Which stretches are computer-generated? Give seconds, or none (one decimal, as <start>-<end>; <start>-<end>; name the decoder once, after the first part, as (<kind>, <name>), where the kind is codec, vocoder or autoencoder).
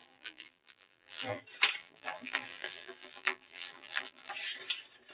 0.0-1.4 (vocoder, BigVGAN v2); 1.8-4.3